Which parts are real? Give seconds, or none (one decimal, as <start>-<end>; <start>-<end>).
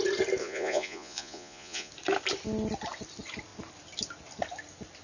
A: 0.0-0.4; 1.9-5.0